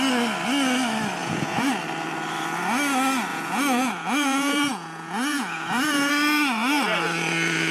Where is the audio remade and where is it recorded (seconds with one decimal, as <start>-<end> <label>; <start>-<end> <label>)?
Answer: 0.0-1.2 recorded; 1.2-1.7 remade; 1.7-3.3 recorded; 3.3-6.1 remade; 6.1-7.7 recorded